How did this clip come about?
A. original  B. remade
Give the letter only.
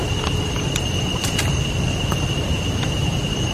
B